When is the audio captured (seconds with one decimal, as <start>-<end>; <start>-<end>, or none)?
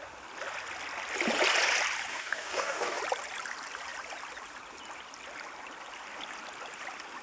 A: 0.0-2.1; 3.0-7.2